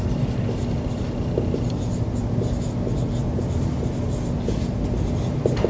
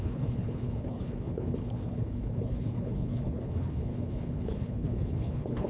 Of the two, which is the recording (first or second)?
first